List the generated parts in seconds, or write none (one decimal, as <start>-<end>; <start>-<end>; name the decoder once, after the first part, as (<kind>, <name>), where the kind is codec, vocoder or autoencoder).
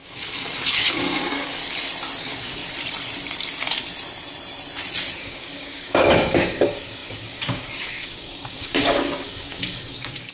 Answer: 0.0-1.6 (codec, DAC); 2.2-2.6; 5.2-10.3